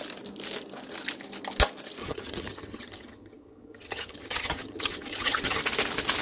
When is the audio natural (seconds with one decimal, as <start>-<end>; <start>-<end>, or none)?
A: 0.0-2.0; 5.6-6.2